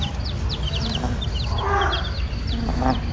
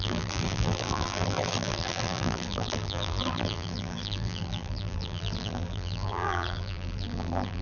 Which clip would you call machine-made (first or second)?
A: second